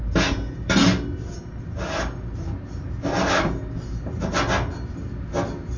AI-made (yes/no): no